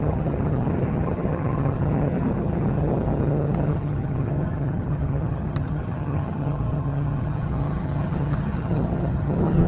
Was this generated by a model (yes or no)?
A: yes